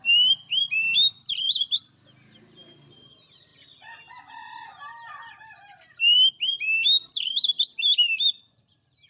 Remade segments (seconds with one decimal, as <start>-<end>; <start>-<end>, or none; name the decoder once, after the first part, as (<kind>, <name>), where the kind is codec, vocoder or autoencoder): none